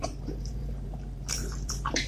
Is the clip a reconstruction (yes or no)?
yes